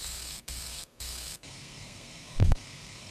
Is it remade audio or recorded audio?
remade